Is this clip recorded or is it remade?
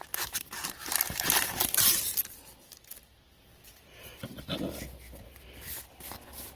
recorded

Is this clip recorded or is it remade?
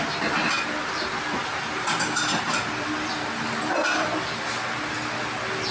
recorded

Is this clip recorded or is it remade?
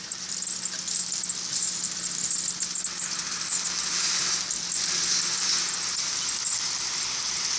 recorded